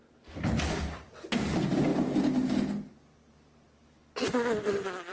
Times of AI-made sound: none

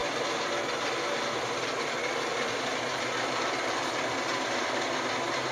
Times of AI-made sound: none

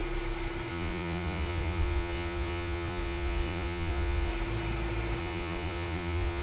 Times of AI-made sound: 0.7-4.3 (vocoder, Vocos); 5.2-6.4